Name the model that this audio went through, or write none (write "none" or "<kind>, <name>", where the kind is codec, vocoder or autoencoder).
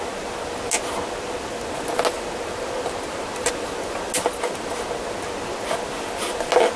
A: none